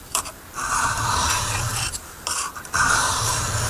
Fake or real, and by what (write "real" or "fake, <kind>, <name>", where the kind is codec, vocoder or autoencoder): fake, vocoder, BigVGAN v2